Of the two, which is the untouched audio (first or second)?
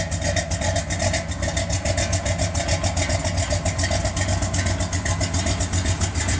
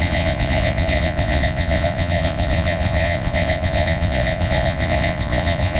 first